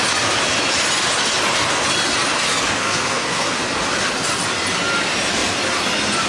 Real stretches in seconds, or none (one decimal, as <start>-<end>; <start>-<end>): 0.0-2.8; 3.6-6.3